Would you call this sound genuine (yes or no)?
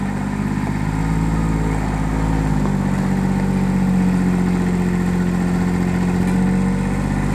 yes